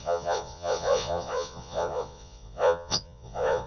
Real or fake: fake